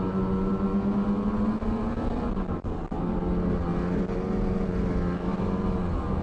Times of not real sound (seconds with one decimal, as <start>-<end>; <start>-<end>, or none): none